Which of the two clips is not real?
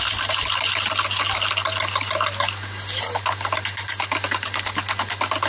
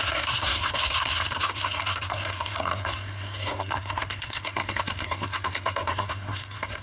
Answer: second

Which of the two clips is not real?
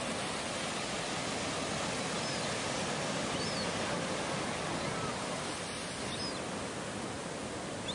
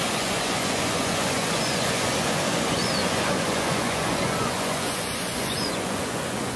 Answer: second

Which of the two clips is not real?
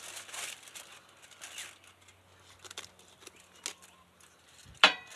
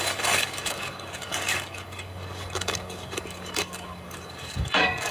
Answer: second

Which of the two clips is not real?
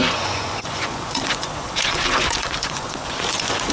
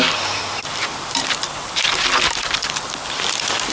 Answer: first